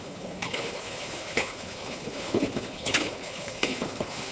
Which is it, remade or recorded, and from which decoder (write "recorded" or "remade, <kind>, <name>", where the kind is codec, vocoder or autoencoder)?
remade, codec, HILCodec